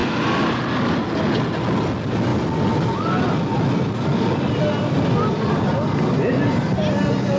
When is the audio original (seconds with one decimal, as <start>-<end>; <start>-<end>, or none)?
0.0-7.4